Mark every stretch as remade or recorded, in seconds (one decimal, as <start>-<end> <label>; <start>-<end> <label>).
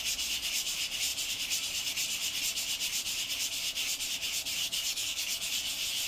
0.0-4.6 recorded; 4.6-5.5 remade; 5.5-6.1 recorded